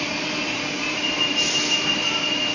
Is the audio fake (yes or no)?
yes